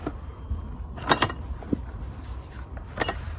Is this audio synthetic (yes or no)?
no